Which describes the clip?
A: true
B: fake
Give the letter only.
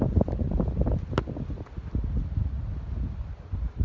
A